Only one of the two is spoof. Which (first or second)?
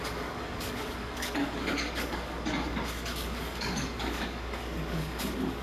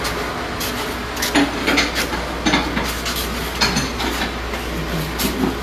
first